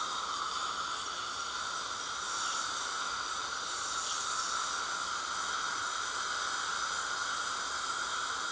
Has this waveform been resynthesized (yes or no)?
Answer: no